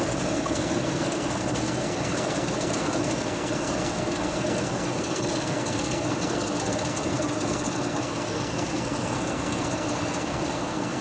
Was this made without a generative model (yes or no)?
no